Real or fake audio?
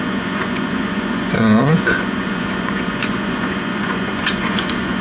fake